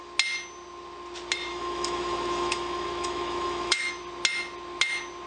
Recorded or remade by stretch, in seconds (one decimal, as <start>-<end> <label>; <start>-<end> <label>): 0.0-1.5 recorded; 1.5-4.0 remade; 4.0-5.3 recorded